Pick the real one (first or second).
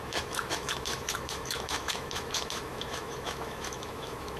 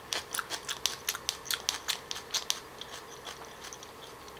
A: second